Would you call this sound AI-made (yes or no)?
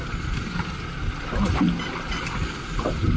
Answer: no